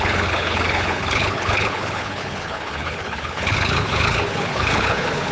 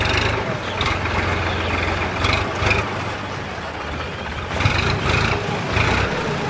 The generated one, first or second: first